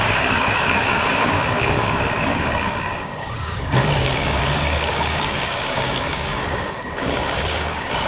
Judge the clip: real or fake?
fake